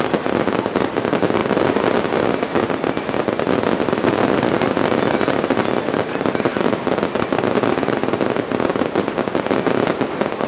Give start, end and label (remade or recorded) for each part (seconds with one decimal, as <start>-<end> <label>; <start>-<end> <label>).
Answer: 0.0-6.5 remade; 6.5-7.4 recorded; 7.4-10.5 remade